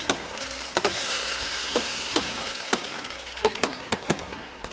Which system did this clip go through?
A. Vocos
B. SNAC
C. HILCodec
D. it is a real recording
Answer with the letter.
B